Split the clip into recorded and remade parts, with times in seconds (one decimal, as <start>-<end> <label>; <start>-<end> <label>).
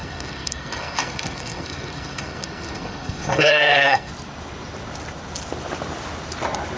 0.0-4.1 remade; 4.1-6.8 recorded